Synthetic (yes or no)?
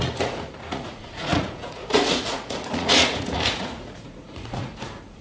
yes